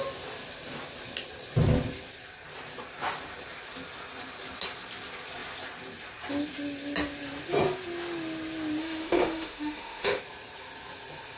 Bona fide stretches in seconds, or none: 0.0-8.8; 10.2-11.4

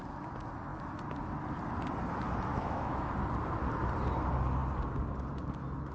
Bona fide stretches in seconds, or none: 0.0-2.5; 3.1-5.9